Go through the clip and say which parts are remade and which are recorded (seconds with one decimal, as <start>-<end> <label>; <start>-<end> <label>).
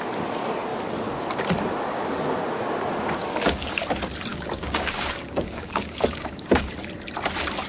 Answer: 0.0-3.2 recorded; 3.2-3.8 remade; 3.8-4.3 recorded; 4.3-6.7 remade; 6.7-7.7 recorded